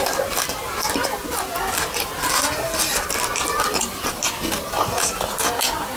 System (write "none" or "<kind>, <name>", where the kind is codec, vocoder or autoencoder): none